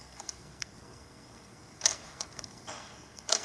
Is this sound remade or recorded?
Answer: remade